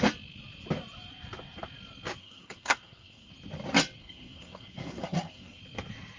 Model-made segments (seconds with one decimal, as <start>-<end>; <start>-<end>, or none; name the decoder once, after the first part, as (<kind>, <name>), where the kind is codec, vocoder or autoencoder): 2.2-3.3 (codec, SNAC); 4.0-5.6